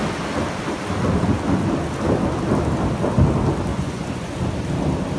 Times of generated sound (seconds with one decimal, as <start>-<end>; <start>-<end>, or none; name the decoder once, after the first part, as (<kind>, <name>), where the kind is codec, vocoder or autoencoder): 3.7-4.4 (vocoder, Vocos)